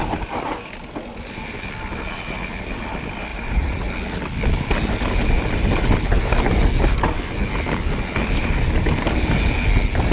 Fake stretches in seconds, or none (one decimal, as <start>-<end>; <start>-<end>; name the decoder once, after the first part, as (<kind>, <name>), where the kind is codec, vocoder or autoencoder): 3.3-3.9 (vocoder, Vocos)